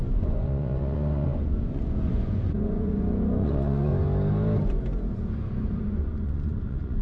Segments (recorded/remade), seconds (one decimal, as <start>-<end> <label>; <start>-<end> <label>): 0.0-3.9 remade; 3.9-5.8 recorded; 5.8-7.0 remade